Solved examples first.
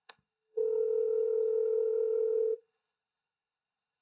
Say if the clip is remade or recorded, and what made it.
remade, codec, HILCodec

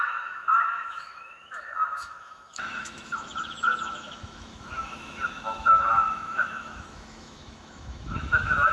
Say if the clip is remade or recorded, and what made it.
remade, autoencoder, DAC-VAE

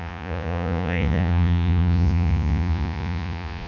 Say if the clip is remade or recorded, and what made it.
remade, vocoder, Vocos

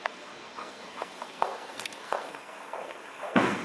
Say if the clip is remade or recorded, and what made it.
remade, codec, SNAC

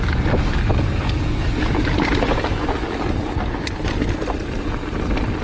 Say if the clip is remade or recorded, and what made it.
recorded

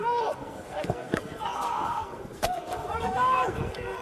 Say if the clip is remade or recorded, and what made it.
remade, codec, SNAC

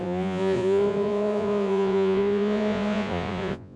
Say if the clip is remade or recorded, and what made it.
remade, vocoder, Vocos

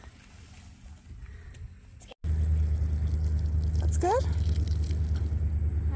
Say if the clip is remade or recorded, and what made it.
recorded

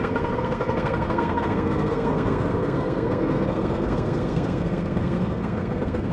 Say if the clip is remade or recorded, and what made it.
remade, codec, SNAC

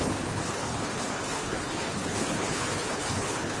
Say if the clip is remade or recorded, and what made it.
remade, codec, HILCodec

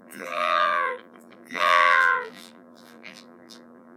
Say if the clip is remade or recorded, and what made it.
remade, vocoder, BigVGAN v2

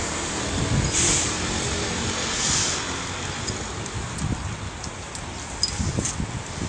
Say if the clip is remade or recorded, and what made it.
recorded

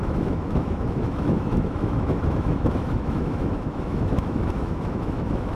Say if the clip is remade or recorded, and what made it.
remade, autoencoder, DAC-VAE